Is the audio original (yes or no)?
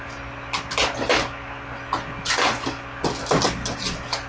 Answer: yes